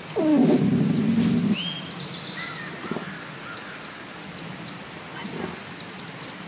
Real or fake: real